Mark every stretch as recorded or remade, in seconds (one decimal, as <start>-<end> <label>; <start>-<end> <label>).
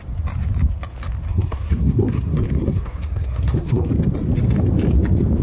0.0-1.3 recorded; 1.3-3.9 remade; 3.9-5.4 recorded